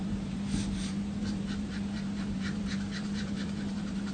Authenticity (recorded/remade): remade